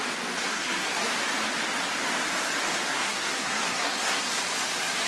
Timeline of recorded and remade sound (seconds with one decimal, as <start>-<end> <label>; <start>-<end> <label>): 0.0-0.4 recorded; 0.4-1.1 remade; 1.1-2.9 recorded; 2.9-4.4 remade; 4.4-5.1 recorded